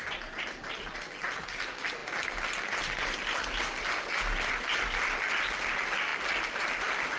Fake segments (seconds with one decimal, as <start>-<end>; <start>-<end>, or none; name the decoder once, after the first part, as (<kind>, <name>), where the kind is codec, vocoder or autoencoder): none